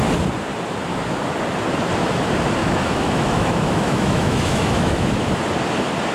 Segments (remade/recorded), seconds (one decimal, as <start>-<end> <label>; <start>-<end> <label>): 0.0-2.6 recorded; 2.6-5.4 remade; 5.4-6.1 recorded